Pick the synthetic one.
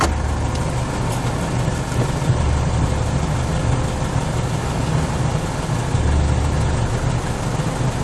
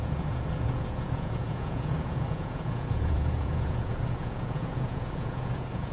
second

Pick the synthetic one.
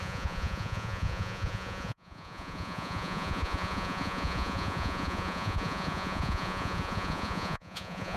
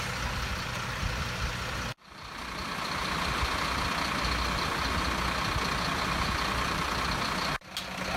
first